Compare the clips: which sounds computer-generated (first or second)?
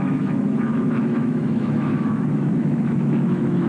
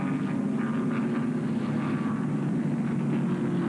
first